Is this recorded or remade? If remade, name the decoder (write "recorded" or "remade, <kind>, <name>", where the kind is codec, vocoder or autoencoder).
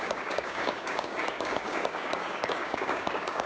remade, codec, DAC